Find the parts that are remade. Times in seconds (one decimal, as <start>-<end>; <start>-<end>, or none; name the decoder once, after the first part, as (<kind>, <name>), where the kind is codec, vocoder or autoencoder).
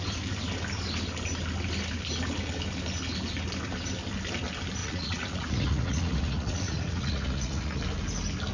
4.8-7.8 (vocoder, Vocos)